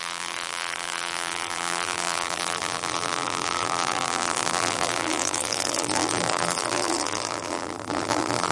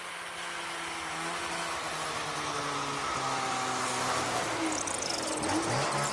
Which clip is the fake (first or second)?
first